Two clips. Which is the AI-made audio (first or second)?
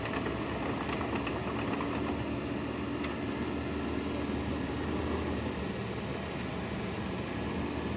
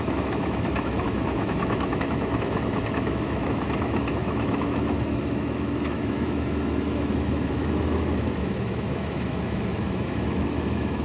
second